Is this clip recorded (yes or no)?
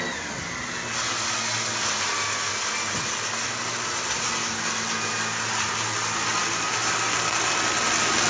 yes